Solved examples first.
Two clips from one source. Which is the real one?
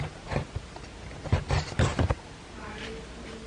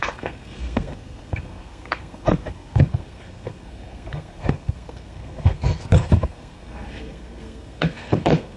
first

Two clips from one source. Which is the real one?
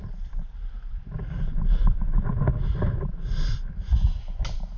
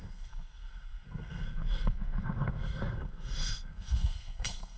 first